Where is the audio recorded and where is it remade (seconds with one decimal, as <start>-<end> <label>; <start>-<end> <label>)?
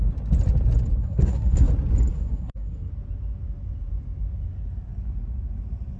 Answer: 0.0-1.0 recorded; 1.0-1.7 remade; 1.7-2.1 recorded; 2.1-2.9 remade; 2.9-6.0 recorded